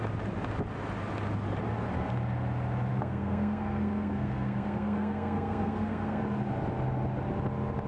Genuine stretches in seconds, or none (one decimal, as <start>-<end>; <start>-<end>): 0.0-2.9; 6.2-7.9